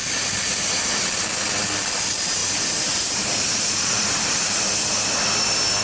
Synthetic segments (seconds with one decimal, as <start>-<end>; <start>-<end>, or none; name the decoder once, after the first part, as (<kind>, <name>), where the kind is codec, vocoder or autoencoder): 2.4-4.9 (vocoder, BigVGAN v2)